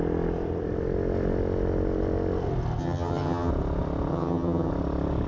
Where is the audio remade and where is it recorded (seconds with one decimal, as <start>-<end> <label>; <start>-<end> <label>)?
0.0-2.8 recorded; 2.8-3.5 remade; 3.5-4.1 recorded; 4.1-4.7 remade; 4.7-5.3 recorded